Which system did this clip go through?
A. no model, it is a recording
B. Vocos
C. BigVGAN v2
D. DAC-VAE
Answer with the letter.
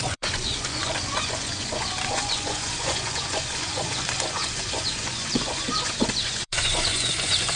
B